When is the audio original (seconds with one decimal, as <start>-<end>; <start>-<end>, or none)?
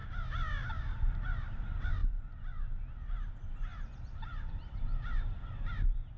0.0-6.2